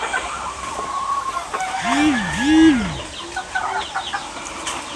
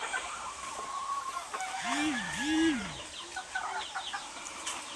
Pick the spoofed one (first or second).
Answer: second